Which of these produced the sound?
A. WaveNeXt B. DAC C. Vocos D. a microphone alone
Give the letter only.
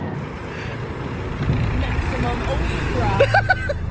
D